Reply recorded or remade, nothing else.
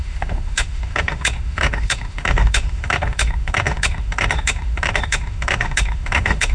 remade